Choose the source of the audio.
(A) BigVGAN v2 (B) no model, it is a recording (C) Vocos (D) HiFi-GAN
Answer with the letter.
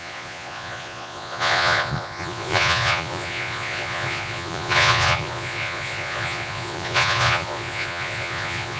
C